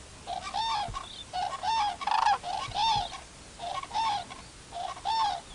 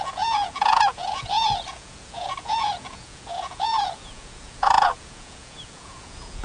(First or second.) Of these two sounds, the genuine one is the first